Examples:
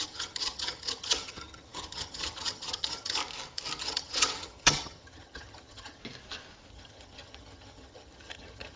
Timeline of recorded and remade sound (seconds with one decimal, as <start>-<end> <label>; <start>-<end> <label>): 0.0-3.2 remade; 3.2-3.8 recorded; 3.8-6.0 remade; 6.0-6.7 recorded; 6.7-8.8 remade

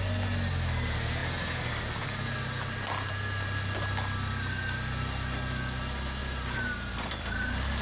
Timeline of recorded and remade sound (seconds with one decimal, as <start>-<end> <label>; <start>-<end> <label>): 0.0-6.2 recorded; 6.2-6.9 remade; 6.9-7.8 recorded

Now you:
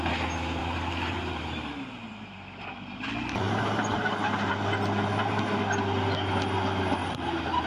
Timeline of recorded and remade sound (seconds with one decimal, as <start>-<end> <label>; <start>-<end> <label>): 0.0-0.6 recorded; 0.6-4.5 remade; 4.5-7.0 recorded; 7.0-7.7 remade

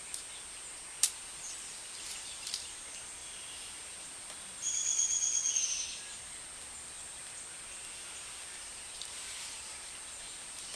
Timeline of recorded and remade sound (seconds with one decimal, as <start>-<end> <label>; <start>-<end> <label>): 0.0-10.8 recorded

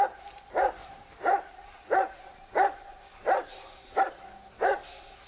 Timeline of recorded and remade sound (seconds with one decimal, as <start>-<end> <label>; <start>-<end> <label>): 0.0-0.8 recorded; 0.8-4.0 remade; 4.0-5.3 recorded

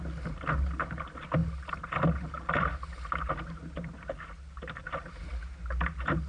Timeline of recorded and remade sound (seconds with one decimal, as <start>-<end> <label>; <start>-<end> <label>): 0.0-6.3 recorded